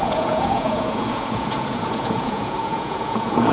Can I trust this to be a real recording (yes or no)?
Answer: no